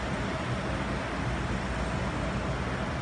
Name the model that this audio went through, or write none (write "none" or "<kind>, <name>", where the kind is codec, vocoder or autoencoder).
none